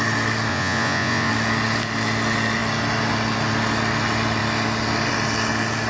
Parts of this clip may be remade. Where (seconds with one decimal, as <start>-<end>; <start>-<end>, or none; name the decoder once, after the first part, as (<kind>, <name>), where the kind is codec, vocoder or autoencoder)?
0.5-1.3 (vocoder, Vocos)